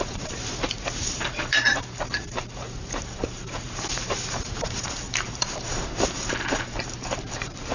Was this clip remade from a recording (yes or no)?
yes